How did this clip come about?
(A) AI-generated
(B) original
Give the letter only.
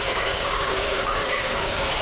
A